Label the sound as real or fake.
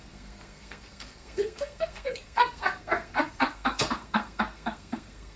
fake